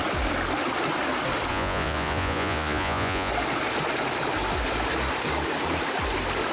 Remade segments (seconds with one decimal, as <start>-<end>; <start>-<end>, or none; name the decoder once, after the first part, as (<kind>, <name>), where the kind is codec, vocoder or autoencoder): 1.5-3.3 (vocoder, Vocos)